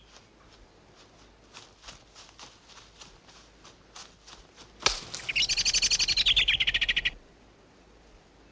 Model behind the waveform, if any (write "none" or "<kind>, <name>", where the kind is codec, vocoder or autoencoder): none